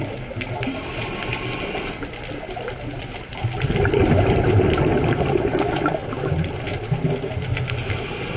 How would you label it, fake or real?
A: real